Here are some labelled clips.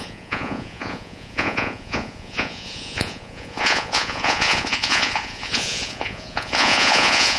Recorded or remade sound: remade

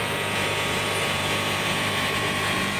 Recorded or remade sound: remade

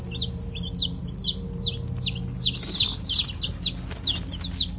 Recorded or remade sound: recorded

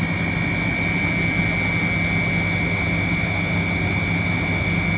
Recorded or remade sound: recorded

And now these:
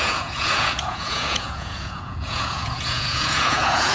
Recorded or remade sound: remade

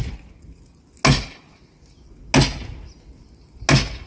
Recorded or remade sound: recorded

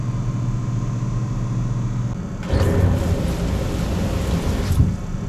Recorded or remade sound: recorded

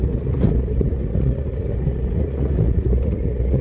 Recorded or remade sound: remade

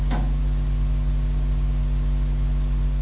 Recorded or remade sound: recorded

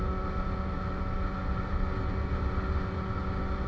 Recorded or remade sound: recorded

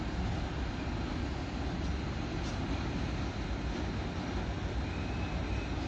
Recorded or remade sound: recorded